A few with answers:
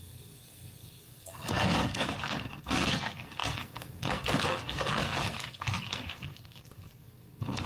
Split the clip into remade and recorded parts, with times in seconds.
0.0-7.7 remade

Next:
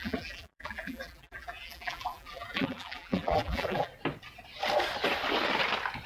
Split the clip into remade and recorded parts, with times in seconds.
0.0-3.9 remade; 3.9-6.1 recorded

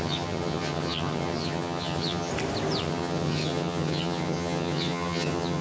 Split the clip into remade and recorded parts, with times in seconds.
0.0-2.3 remade; 2.3-2.8 recorded; 2.8-5.6 remade

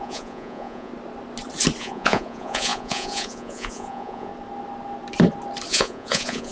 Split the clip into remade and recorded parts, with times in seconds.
0.0-0.9 remade; 0.9-1.8 recorded; 1.8-4.3 remade; 4.3-5.7 recorded; 5.7-6.5 remade